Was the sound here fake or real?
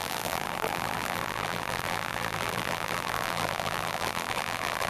fake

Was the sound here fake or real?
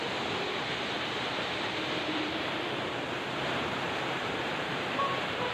fake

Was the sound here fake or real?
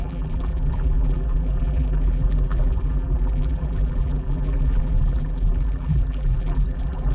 fake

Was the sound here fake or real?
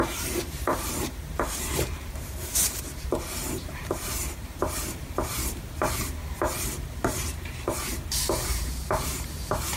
fake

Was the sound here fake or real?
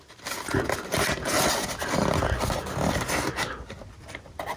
real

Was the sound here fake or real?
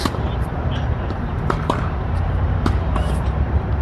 fake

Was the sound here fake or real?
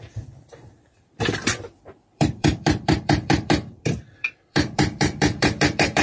fake